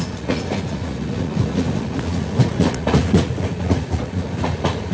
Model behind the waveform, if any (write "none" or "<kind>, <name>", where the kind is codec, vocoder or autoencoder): vocoder, Vocos